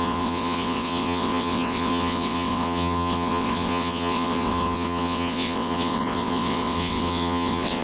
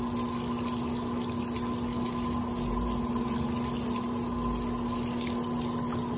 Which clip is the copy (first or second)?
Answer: first